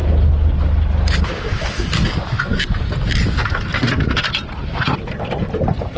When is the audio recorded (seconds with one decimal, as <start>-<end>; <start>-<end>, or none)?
0.0-6.0